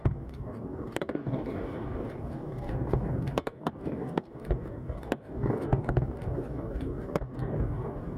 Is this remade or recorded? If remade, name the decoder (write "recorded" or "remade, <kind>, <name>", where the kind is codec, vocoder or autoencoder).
remade, codec, DAC